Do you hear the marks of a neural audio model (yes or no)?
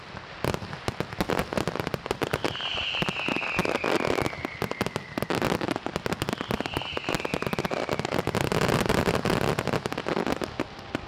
no